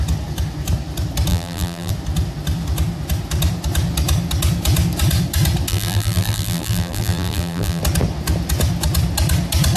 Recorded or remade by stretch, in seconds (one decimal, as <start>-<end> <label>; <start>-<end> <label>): 0.0-1.3 recorded; 1.3-1.9 remade; 1.9-5.7 recorded; 5.7-7.8 remade; 7.8-9.8 recorded